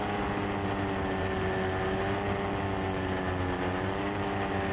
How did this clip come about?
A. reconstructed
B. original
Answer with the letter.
B